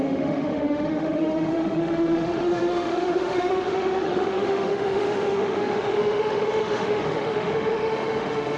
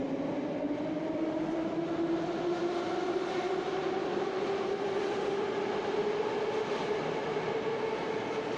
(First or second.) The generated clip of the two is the first